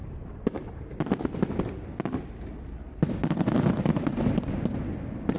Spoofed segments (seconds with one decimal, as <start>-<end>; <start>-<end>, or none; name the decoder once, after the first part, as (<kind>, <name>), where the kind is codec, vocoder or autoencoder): 0.0-1.7 (vocoder, BigVGAN v2)